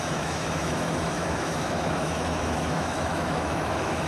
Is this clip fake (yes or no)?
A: yes